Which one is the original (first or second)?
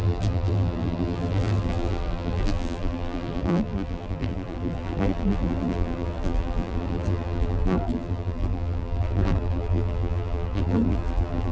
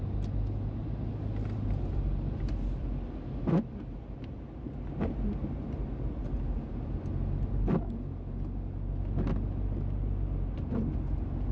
second